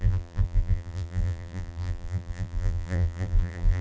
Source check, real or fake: fake